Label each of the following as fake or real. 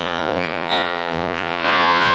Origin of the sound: fake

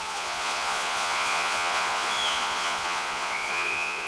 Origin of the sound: fake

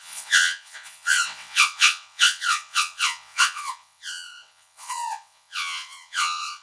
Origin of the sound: fake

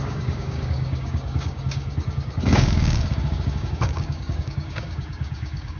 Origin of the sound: fake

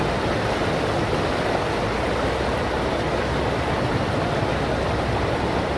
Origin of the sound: real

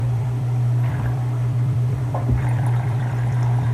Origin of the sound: fake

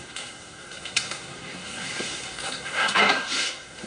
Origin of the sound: fake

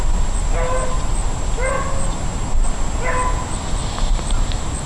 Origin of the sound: real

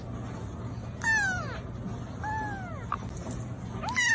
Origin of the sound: real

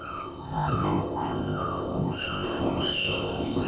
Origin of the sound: fake